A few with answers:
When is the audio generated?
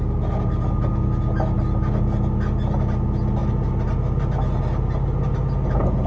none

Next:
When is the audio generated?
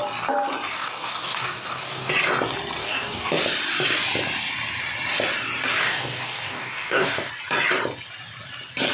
0.7-2.1 (codec, DAC); 2.8-3.3; 5.7-7.3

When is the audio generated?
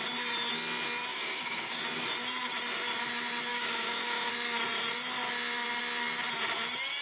1.1-1.8 (codec, DAC); 3.5-4.3